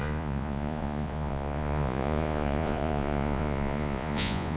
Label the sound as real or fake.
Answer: fake